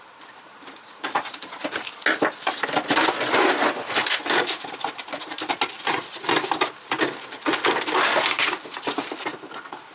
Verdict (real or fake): real